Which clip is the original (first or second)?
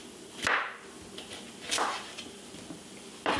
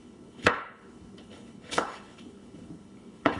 first